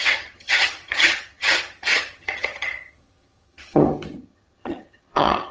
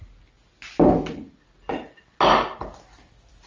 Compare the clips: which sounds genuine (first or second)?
second